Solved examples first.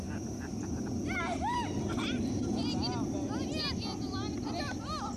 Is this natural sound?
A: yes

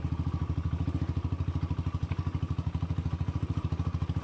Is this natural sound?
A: yes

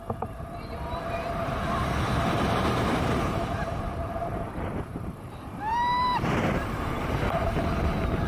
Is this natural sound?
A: no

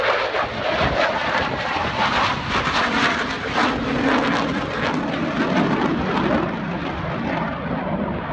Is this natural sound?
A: yes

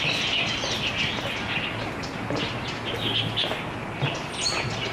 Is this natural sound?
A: yes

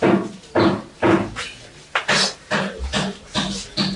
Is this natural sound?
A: yes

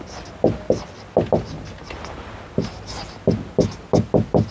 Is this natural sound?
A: yes